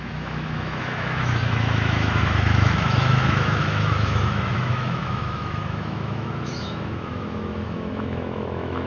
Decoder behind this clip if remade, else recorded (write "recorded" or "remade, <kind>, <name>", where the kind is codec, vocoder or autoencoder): remade, autoencoder, DAC-VAE